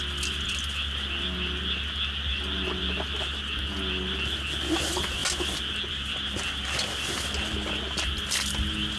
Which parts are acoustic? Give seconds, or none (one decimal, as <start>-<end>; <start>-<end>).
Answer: 0.0-9.0